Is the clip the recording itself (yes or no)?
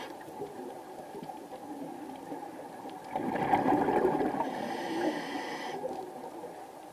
yes